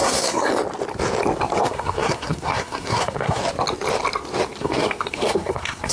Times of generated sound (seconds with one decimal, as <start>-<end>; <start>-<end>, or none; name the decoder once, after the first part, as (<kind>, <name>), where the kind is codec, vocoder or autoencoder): 0.0-0.5 (codec, SNAC); 1.6-3.4; 4.6-5.9